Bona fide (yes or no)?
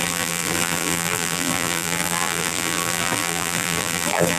no